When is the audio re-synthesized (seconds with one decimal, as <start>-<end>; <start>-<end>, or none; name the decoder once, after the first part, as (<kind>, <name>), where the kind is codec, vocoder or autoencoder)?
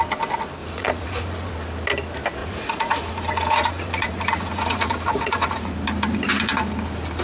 0.6-1.5 (vocoder, Vocos); 2.4-5.7